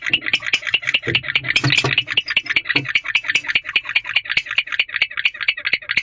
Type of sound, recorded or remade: recorded